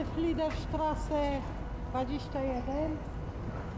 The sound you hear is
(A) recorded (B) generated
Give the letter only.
A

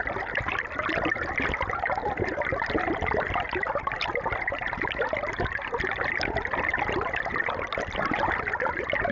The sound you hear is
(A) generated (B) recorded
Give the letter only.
B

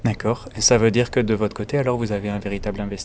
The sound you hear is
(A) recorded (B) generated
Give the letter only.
A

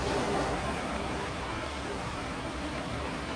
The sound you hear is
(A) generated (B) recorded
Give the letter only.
A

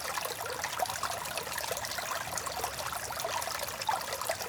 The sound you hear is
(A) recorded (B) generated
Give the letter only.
A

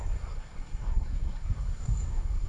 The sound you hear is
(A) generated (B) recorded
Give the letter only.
A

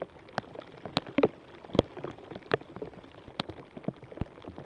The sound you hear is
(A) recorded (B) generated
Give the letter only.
A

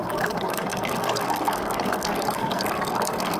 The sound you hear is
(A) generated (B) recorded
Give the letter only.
A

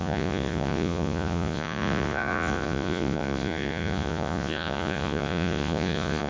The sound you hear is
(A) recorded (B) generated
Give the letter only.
B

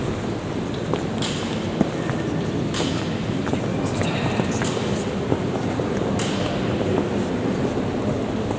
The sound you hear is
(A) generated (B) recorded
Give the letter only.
B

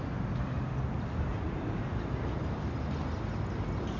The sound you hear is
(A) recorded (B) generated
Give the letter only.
A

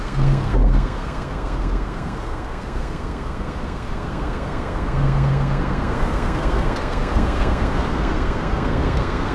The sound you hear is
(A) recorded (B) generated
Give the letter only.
B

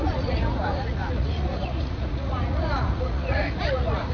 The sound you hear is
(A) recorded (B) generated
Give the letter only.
B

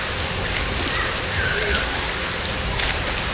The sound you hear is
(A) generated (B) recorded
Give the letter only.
B